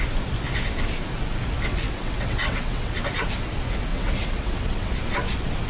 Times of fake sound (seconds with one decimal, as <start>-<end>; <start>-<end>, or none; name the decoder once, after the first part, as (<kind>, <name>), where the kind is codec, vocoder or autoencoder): 1.7-3.0 (vocoder, WaveNeXt); 3.9-4.9